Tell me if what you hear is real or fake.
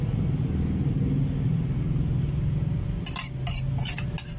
real